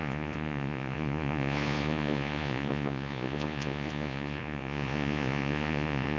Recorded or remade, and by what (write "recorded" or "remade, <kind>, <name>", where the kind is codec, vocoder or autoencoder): remade, vocoder, Vocos